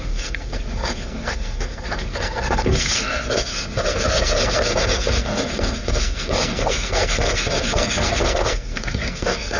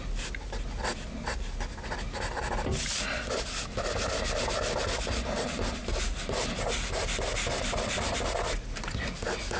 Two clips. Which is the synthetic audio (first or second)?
first